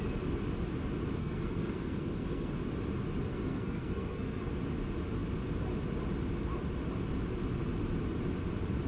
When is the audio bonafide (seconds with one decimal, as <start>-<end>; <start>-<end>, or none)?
0.0-1.2; 2.5-3.3; 4.5-8.9